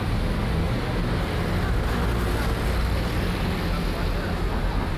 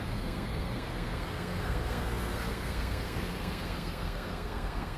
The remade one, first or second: second